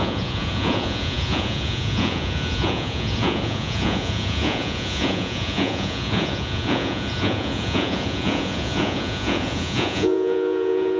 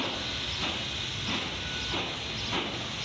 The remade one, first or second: first